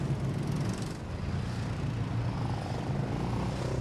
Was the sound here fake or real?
real